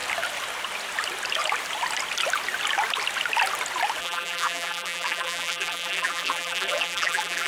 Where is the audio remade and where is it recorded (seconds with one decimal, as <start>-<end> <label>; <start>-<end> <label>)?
0.0-4.0 recorded; 4.0-7.5 remade